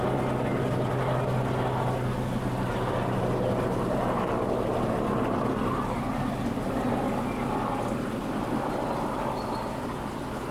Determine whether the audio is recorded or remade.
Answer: recorded